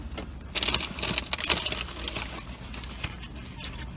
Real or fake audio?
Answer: real